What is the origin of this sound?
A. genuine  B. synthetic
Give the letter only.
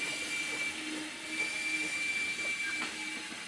A